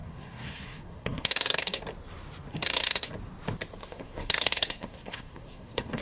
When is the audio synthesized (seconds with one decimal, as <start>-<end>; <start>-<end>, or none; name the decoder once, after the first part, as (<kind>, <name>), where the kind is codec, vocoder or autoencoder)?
0.0-1.8 (codec, SNAC); 2.5-3.1; 3.8-6.0